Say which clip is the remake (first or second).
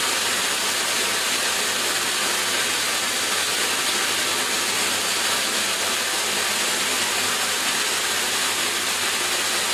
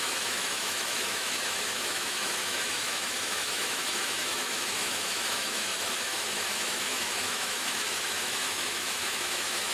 second